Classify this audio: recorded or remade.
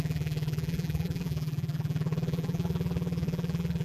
remade